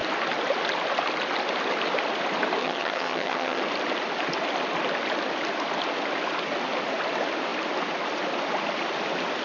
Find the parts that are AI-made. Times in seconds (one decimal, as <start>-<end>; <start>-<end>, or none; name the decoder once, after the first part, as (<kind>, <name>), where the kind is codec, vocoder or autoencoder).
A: 2.6-3.6 (vocoder, HiFi-GAN)